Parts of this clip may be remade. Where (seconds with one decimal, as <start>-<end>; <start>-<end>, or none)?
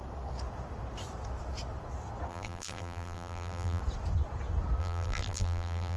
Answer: 2.3-3.8; 4.8-6.0